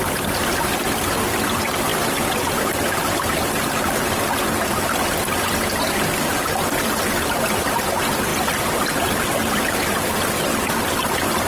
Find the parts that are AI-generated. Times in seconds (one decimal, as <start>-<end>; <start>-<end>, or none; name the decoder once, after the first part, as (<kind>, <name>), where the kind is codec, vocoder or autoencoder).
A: none